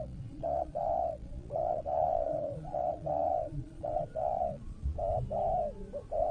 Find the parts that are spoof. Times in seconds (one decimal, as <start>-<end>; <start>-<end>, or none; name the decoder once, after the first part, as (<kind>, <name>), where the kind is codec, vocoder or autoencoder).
0.0-5.0 (vocoder, Vocos)